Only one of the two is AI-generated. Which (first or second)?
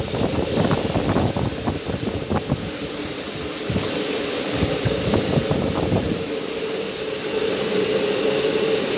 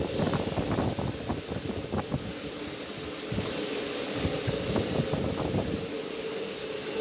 first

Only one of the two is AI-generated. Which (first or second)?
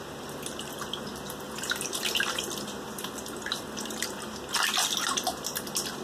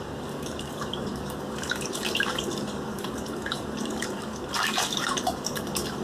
second